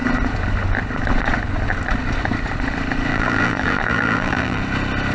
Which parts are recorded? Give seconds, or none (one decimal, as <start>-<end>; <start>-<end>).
0.0-3.1; 4.6-5.1